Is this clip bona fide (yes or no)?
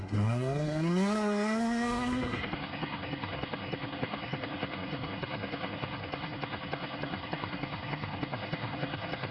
no